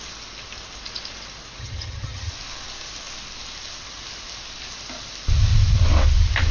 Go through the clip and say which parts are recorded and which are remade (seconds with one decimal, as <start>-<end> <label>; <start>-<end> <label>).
0.0-1.6 recorded; 1.6-2.3 remade; 2.3-6.5 recorded